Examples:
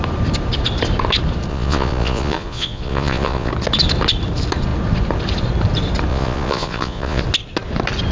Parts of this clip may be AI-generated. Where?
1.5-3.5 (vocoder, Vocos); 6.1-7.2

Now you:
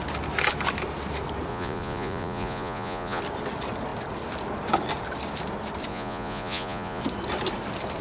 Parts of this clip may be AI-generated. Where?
1.5-3.2 (vocoder, Vocos); 5.9-7.0

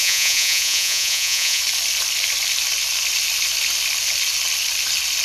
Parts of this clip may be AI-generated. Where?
0.0-1.6 (vocoder, Vocos)

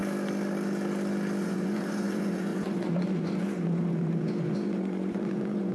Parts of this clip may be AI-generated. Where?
1.4-5.7 (vocoder, Vocos)

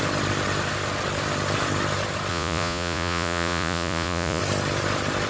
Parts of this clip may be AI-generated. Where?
2.3-4.4 (vocoder, Vocos)